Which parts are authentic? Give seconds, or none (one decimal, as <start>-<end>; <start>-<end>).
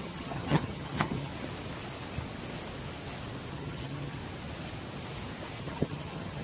1.3-3.5; 4.2-5.6